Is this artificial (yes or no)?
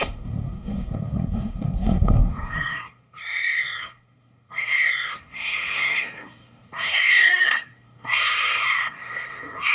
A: yes